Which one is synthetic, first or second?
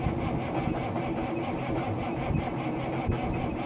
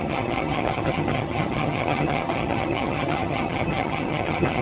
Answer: second